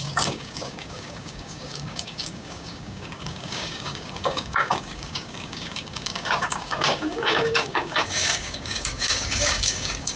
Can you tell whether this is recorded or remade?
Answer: remade